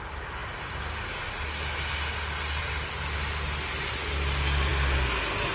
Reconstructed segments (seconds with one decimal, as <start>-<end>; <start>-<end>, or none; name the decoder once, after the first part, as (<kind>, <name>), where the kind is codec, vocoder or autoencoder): none